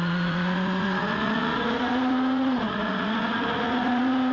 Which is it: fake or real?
fake